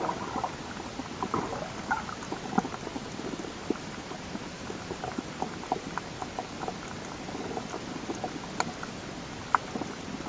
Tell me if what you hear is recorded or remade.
recorded